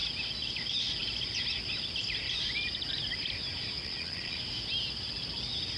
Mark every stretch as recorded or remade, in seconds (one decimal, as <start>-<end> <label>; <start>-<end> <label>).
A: 0.0-3.8 recorded; 3.8-4.4 remade; 4.4-5.8 recorded